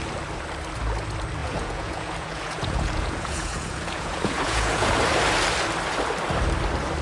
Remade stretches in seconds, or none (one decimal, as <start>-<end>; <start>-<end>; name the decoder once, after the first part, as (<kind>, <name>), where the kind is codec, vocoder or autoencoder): 1.4-4.9 (vocoder, Vocos)